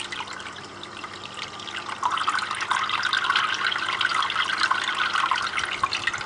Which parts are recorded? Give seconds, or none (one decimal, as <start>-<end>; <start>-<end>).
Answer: 0.0-6.3